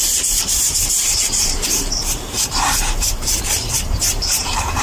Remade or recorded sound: remade